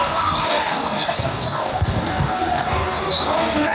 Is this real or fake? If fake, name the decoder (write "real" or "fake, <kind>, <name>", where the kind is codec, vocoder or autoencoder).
fake, codec, DAC